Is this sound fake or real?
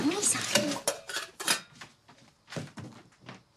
real